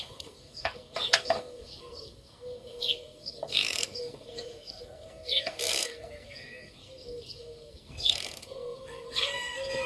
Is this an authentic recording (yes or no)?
no